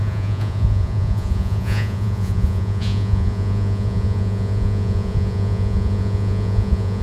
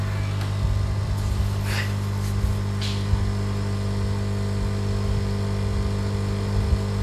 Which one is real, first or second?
second